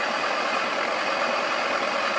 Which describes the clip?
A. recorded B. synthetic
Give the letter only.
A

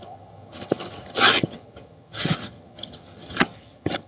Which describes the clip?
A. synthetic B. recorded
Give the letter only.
A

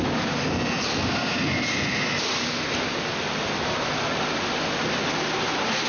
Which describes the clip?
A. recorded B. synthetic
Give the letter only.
A